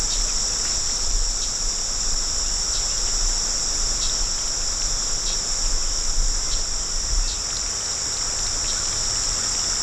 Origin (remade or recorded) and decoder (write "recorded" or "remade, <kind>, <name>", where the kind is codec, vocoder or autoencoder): recorded